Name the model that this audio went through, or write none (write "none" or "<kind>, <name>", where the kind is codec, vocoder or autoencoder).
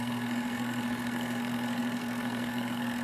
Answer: codec, SNAC